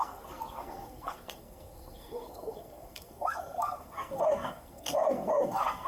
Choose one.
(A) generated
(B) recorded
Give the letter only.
A